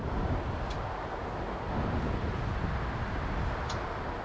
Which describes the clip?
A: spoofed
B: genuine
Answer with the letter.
B